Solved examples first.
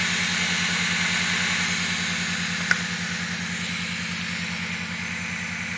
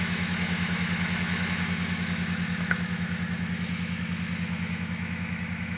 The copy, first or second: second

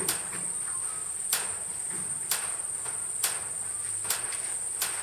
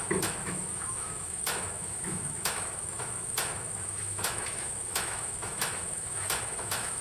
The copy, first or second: second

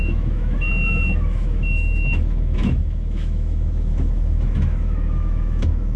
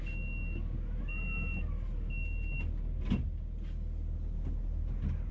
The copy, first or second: first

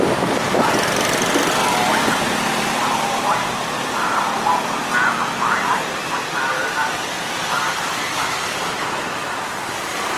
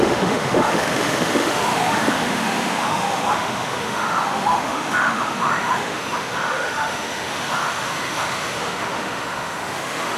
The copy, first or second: second